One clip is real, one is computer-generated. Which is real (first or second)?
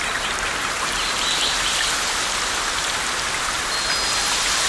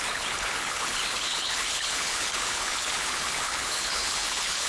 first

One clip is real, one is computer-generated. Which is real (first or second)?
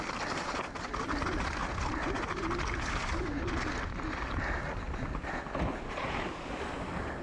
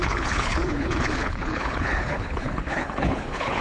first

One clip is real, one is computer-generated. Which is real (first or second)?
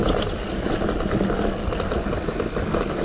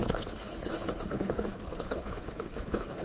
first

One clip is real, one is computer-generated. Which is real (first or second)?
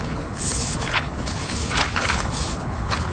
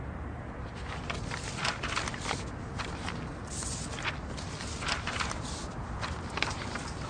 second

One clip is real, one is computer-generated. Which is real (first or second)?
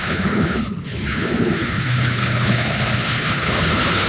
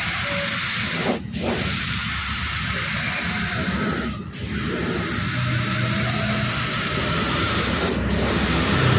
second